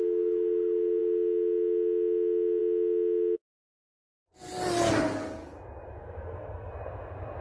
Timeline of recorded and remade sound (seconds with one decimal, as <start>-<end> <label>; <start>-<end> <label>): 0.0-6.0 recorded; 6.0-6.7 remade; 6.7-7.4 recorded